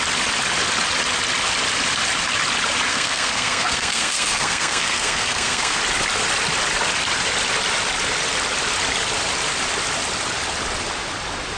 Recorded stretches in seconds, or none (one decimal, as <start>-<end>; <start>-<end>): 0.0-2.9; 5.8-11.6